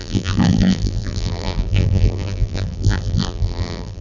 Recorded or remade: remade